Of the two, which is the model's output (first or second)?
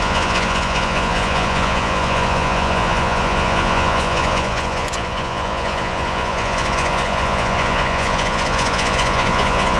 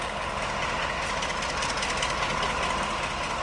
first